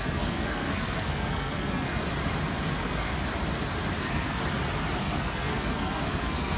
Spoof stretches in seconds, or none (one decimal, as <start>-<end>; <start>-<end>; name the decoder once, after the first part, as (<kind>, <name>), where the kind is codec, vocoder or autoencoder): 0.0-2.0 (codec, SNAC); 2.7-3.1; 4.0-4.4; 5.0-6.6